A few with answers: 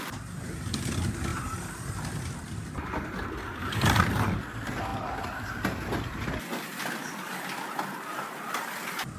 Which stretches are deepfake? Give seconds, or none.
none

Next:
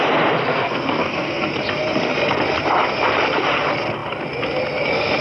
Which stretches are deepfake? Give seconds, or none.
0.5-1.5 (codec, SNAC)

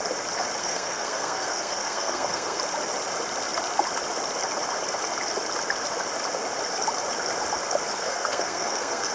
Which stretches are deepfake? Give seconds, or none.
0.6-2.6 (codec, SNAC); 7.9-9.1

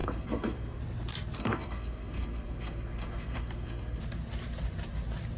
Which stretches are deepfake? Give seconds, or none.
0.0-0.8 (codec, SNAC); 1.4-4.0

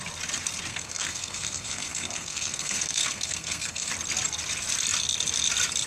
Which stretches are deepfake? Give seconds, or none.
0.7-3.9 (codec, SNAC)

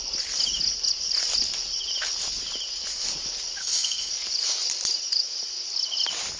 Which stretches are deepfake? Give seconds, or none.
3.6-4.1 (codec, SNAC)

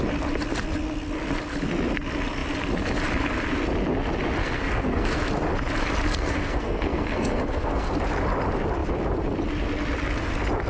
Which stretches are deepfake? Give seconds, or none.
4.4-5.2 (codec, SNAC); 6.1-7.9

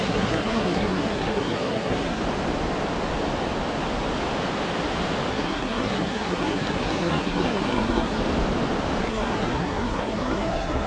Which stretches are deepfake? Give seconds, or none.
0.0-2.2 (codec, SNAC); 5.3-8.2; 9.0-10.9